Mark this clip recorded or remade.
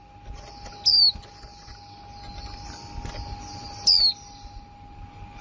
recorded